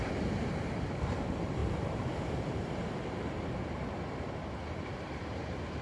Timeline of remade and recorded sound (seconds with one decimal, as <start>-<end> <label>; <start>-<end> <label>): 0.0-5.8 remade